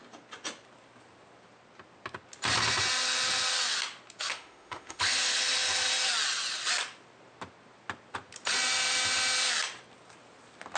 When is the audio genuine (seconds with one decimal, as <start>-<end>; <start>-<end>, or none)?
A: 0.0-4.3; 5.0-10.8